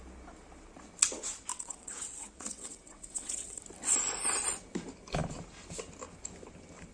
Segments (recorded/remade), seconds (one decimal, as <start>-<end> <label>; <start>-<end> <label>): 0.0-1.5 recorded; 1.5-3.6 remade; 3.6-6.9 recorded